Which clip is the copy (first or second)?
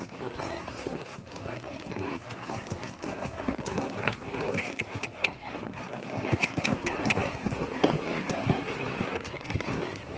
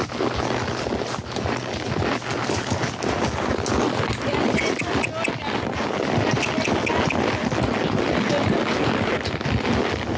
first